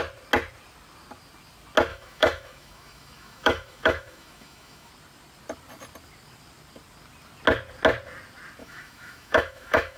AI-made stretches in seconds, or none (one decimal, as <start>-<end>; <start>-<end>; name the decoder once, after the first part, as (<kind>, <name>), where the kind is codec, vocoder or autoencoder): 1.9-4.9 (autoencoder, DAC-VAE); 8.6-10.0